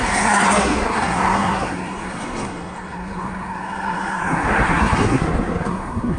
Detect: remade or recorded remade